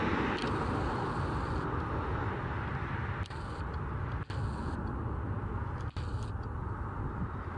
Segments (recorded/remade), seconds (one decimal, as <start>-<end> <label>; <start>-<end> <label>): 0.0-7.6 recorded